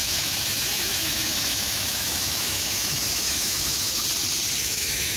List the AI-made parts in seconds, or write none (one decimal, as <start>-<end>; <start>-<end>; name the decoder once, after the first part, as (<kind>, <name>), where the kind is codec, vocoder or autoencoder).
0.0-4.0 (autoencoder, DAC-VAE); 4.6-5.2